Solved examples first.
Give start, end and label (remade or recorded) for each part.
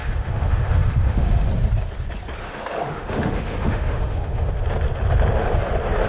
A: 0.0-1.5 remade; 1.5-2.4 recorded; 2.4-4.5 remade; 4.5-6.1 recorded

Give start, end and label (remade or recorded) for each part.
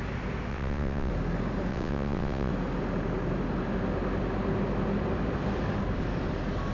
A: 0.0-0.5 recorded; 0.5-1.1 remade; 1.1-1.7 recorded; 1.7-2.5 remade; 2.5-6.7 recorded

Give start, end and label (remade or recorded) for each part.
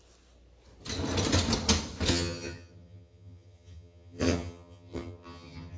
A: 0.0-2.1 recorded; 2.1-5.8 remade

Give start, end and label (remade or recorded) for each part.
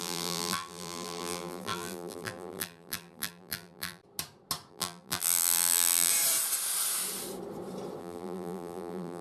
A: 0.0-4.0 remade; 4.0-4.7 recorded; 4.7-6.1 remade; 6.1-8.0 recorded; 8.0-9.2 remade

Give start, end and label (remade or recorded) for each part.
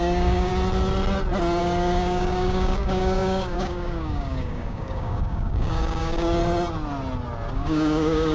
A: 0.0-0.5 remade; 0.5-1.6 recorded; 1.6-6.4 remade; 6.4-7.5 recorded; 7.5-8.3 remade